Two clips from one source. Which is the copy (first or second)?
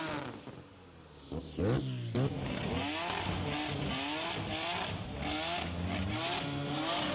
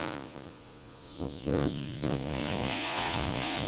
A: second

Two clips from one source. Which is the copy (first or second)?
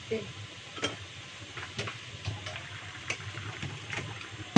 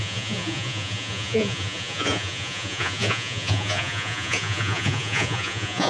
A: second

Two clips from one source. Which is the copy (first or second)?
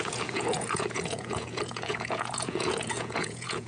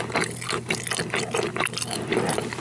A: first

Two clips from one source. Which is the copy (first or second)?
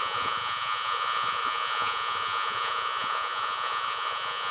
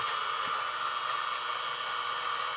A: first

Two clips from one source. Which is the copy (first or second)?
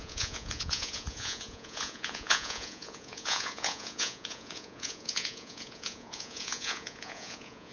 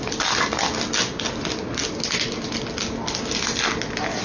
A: first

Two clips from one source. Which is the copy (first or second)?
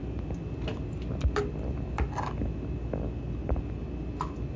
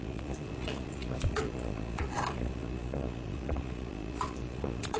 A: second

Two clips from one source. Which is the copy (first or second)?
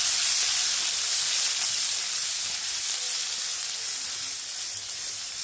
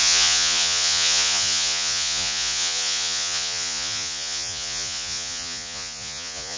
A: second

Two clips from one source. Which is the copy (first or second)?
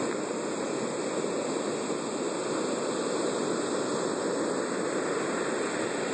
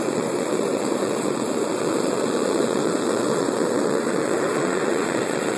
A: second